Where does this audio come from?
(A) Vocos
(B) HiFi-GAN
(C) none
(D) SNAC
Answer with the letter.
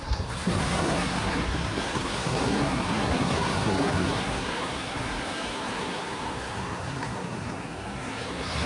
D